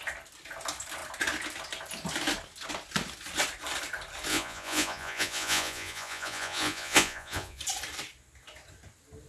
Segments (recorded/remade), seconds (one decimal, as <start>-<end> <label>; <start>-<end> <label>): 0.0-4.3 recorded; 4.3-7.6 remade; 7.6-9.3 recorded